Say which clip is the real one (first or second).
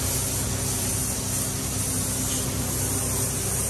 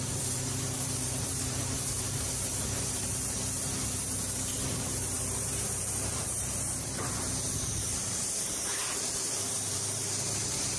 first